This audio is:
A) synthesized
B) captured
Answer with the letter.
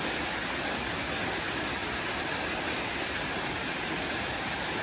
B